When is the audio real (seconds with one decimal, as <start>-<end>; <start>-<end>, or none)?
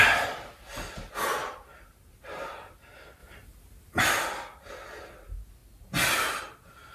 0.0-1.4; 2.5-3.2; 4.0-6.9